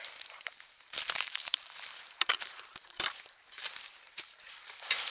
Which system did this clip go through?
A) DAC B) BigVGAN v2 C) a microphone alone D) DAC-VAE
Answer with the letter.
B